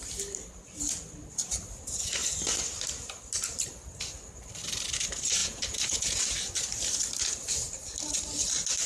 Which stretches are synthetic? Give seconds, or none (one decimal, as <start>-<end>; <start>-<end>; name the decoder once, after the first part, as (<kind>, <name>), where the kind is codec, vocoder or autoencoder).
5.4-6.2 (vocoder, Vocos)